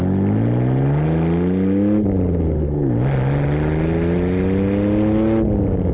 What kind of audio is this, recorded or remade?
recorded